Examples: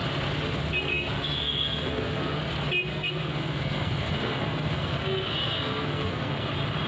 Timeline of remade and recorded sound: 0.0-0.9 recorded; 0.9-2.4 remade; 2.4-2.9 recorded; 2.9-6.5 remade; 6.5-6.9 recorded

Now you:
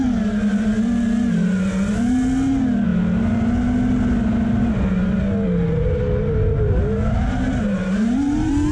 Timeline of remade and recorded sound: 0.0-8.7 recorded

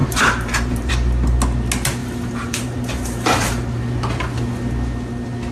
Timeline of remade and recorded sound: 0.0-0.9 remade; 0.9-2.0 recorded; 2.0-3.8 remade; 3.8-5.5 recorded

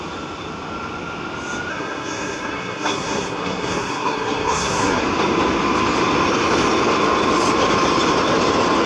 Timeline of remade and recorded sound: 0.0-1.7 recorded; 1.7-5.0 remade; 5.0-8.9 recorded

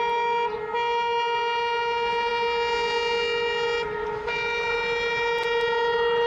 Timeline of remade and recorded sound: 0.0-6.3 recorded